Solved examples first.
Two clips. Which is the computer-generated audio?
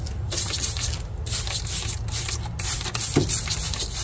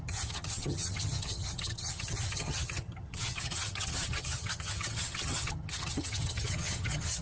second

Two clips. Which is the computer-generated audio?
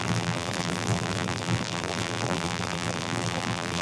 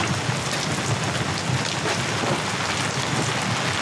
first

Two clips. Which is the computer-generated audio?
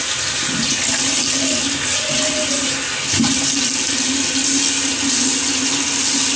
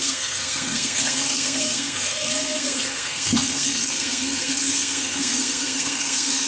second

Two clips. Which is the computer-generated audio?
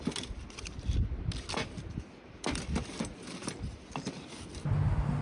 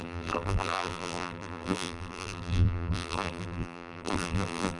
second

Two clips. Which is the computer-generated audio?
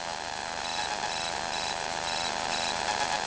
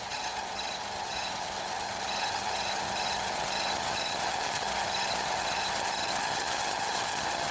second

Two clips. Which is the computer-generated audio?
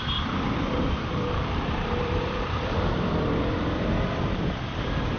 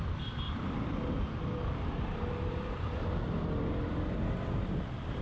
first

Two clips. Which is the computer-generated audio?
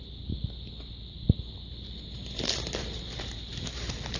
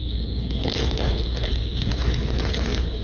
second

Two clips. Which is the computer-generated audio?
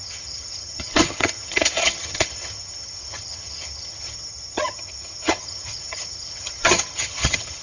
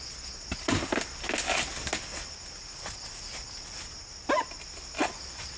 first